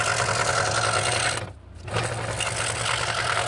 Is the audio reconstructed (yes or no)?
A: no